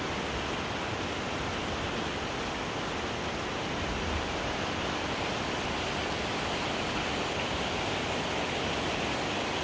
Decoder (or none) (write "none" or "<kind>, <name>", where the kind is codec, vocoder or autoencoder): none